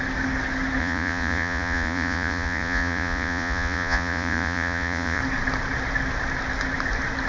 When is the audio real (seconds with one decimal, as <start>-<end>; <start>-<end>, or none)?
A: 0.0-0.8; 5.2-7.3